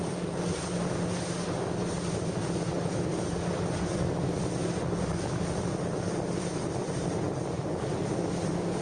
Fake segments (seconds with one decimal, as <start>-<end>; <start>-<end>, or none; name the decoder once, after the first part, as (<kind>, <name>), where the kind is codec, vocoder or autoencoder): none